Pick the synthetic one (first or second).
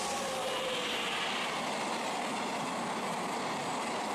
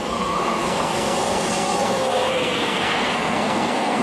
second